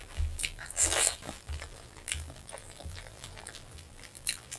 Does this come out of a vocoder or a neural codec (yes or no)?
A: yes